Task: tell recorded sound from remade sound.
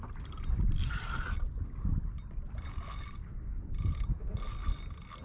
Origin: recorded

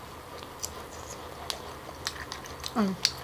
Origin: recorded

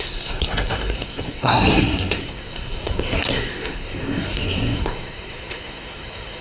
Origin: remade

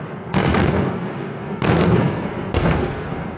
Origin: remade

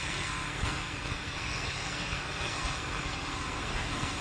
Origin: remade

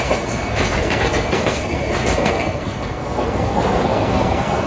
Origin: remade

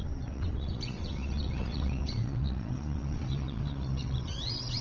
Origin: remade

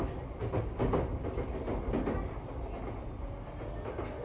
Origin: recorded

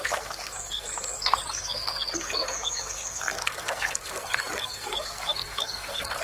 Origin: remade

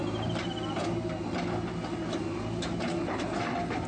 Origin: recorded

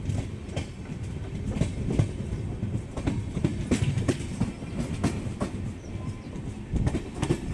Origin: remade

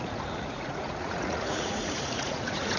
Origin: remade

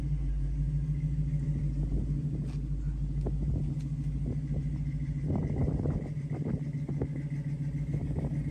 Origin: recorded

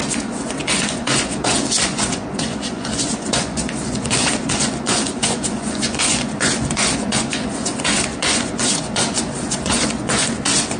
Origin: remade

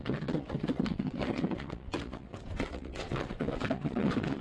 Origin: remade